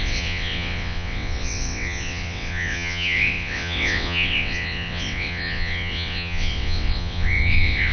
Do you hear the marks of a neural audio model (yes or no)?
yes